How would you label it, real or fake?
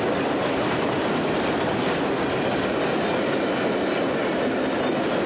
real